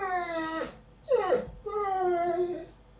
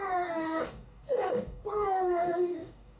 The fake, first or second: second